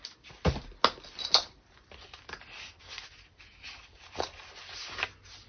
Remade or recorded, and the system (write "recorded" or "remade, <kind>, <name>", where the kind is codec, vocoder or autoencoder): recorded